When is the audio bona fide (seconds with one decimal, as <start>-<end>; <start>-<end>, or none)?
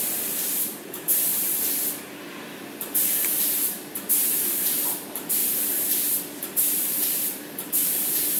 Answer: 1.3-2.8; 5.4-6.4